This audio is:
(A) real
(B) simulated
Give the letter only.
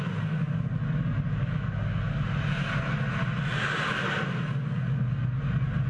A